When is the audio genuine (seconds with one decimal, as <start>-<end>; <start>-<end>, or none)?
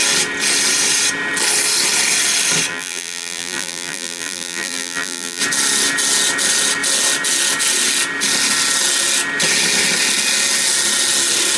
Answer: 0.0-2.7; 5.4-11.6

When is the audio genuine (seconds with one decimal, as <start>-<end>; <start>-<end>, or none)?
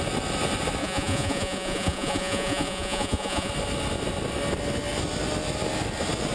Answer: 0.0-0.8; 3.5-6.3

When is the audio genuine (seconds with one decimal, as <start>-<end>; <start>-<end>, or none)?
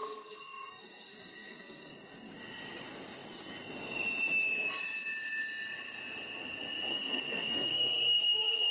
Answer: 2.3-6.9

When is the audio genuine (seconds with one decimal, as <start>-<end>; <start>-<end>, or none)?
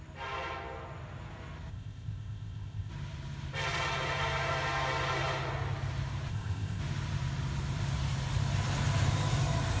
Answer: 0.0-1.7; 2.9-6.3; 6.8-9.8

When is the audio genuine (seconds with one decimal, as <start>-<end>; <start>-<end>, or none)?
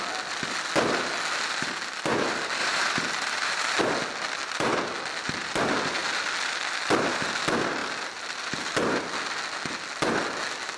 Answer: 0.0-2.6; 3.8-10.8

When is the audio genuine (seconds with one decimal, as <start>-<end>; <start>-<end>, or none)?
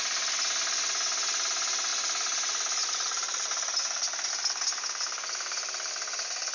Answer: 0.0-6.5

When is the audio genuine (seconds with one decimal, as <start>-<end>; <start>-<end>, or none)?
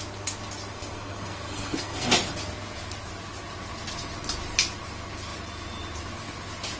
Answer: 0.0-0.7; 2.1-6.8